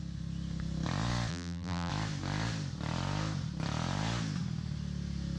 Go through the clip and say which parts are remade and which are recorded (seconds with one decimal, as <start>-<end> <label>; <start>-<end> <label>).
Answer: 0.0-1.3 recorded; 1.3-1.9 remade; 1.9-5.4 recorded